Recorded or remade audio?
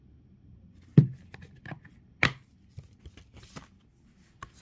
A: recorded